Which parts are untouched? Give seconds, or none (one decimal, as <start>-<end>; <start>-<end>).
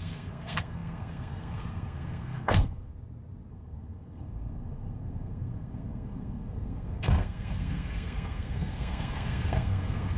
2.9-3.5